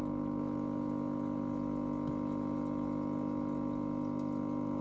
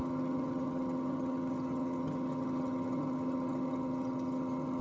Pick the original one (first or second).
first